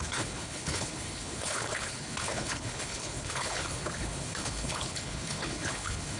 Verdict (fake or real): fake